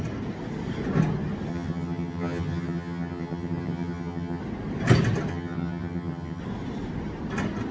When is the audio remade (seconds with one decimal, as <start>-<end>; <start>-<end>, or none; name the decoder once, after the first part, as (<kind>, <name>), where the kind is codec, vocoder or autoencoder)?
1.5-4.4 (vocoder, HiFi-GAN); 5.3-6.4